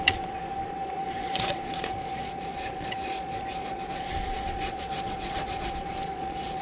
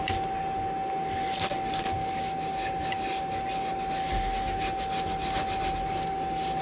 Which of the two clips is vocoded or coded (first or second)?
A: first